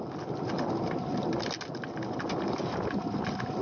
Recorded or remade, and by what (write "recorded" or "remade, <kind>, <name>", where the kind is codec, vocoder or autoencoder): recorded